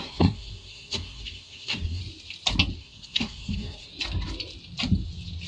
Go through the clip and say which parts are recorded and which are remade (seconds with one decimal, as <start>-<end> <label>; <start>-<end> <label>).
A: 0.0-2.0 remade; 2.0-2.8 recorded; 2.8-3.9 remade; 3.9-5.5 recorded